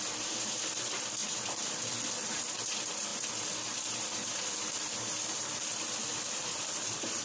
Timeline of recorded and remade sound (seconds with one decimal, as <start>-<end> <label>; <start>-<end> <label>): 0.0-7.2 recorded